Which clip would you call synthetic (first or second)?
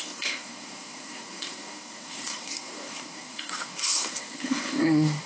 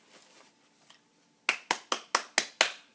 first